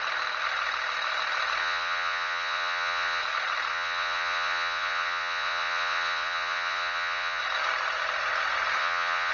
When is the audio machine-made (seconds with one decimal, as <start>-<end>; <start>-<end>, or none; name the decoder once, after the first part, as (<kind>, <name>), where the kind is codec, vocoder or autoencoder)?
1.6-3.2 (vocoder, Vocos); 3.7-7.4; 8.8-9.3